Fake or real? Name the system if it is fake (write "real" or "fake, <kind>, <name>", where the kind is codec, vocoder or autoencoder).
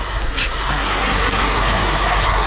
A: fake, codec, SNAC